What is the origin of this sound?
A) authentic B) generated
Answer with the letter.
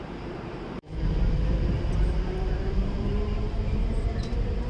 B